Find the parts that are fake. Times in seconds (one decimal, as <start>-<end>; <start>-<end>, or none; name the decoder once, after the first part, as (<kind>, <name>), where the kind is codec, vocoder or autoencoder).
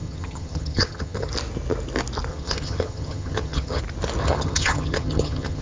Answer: 0.0-1.3 (vocoder, HiFi-GAN); 2.3-3.8; 4.2-5.6